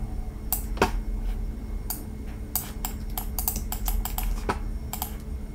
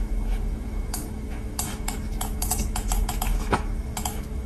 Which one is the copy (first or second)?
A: second